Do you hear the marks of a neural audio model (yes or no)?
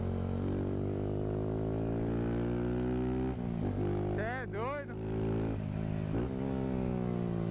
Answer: no